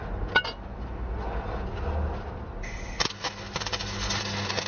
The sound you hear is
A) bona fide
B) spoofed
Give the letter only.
A